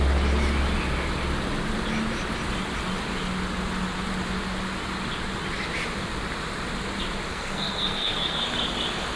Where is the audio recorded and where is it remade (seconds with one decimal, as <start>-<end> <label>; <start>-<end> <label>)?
0.0-7.3 recorded; 7.3-8.4 remade; 8.4-9.2 recorded

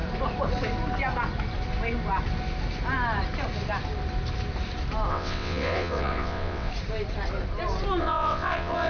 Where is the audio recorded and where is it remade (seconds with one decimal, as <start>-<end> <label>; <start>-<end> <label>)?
0.0-5.1 recorded; 5.1-6.7 remade; 6.7-8.0 recorded; 8.0-8.9 remade